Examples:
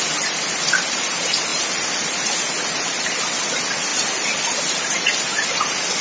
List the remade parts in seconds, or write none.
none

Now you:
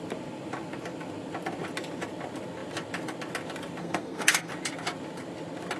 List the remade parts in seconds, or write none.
3.8-4.5 (codec, SNAC)

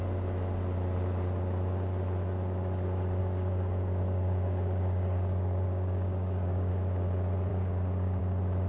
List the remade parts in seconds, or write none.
3.2-6.7 (codec, DAC); 7.5-8.2

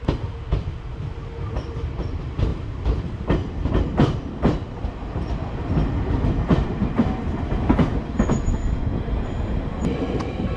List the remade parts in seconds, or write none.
0.0-7.9 (vocoder, BigVGAN v2); 8.9-10.6